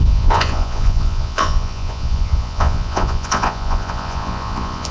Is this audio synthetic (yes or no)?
yes